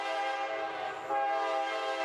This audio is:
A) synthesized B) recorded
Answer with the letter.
B